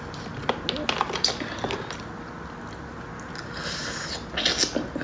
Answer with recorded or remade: recorded